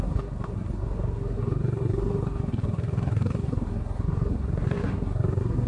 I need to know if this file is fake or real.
fake